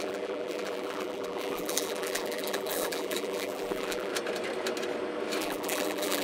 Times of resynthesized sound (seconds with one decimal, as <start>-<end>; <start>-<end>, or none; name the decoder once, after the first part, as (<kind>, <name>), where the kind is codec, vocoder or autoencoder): 0.0-4.1 (vocoder, BigVGAN v2); 5.4-6.2